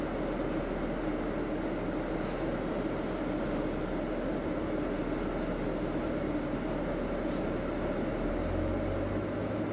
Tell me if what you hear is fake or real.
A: real